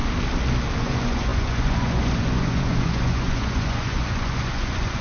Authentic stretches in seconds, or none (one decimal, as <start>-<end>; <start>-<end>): 0.0-0.8